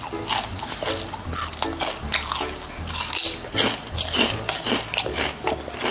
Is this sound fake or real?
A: real